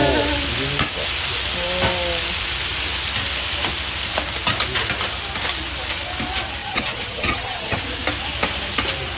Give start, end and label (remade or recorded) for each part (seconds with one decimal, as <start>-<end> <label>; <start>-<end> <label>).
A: 0.0-6.6 recorded; 6.6-7.8 remade; 7.8-9.2 recorded